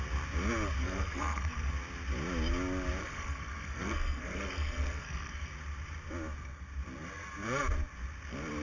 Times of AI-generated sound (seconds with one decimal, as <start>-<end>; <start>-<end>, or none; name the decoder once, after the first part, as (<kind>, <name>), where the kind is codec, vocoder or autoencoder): 0.8-1.7 (codec, SNAC); 3.0-5.5

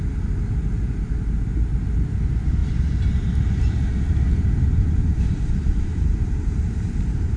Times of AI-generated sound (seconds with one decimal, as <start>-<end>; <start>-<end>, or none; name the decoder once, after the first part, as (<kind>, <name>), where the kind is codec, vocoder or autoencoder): 2.6-7.0 (vocoder, BigVGAN v2)